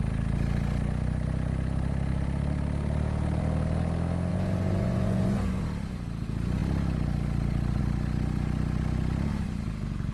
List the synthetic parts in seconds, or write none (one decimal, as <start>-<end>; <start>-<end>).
4.3-5.6